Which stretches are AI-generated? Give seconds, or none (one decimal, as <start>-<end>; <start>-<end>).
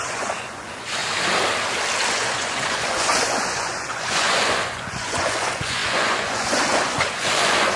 0.0-1.0; 2.1-7.8